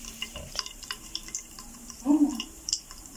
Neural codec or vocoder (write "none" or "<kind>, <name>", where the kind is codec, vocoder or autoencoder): vocoder, BigVGAN v2